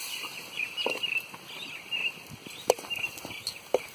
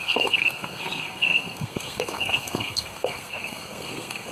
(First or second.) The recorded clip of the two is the first